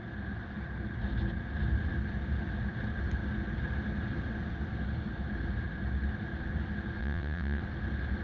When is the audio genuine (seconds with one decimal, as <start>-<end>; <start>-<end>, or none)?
0.0-7.0; 7.6-8.2